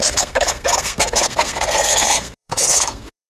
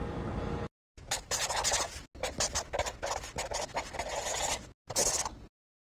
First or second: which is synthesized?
first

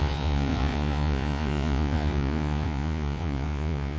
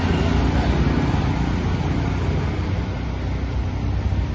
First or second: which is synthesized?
first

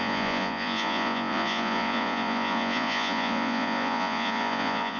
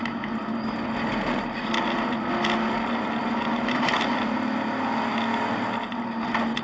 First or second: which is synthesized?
first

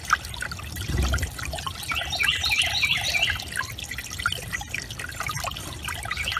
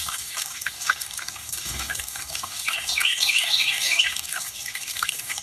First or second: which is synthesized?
second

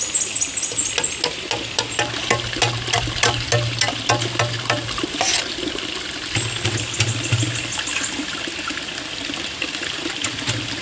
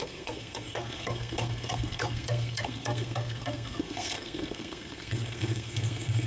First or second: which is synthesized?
second